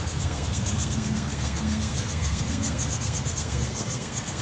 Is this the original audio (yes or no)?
no